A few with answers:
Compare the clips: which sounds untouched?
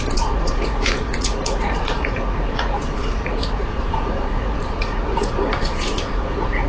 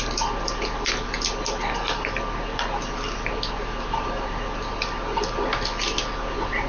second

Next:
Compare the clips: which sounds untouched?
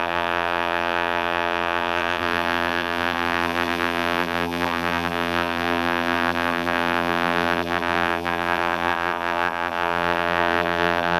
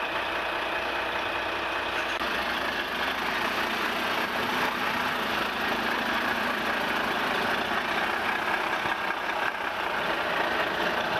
second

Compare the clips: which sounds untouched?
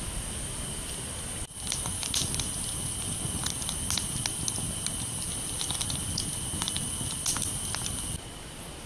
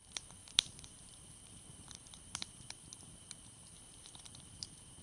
first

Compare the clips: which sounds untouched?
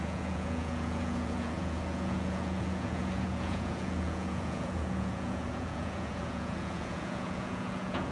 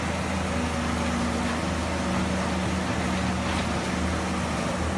second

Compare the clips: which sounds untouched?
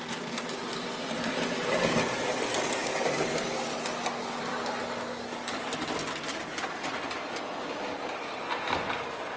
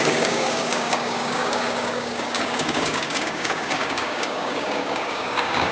first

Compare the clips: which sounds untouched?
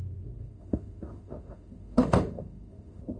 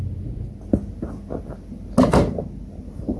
second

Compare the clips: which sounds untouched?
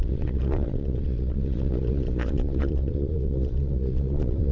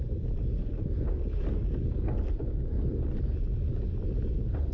second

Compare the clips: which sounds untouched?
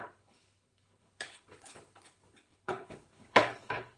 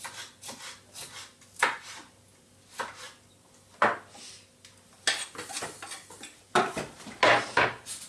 second